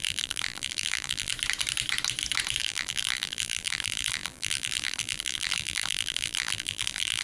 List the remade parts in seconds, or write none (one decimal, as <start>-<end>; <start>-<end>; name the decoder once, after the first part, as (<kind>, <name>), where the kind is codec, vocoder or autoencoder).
0.0-1.3 (vocoder, BigVGAN v2); 2.6-7.2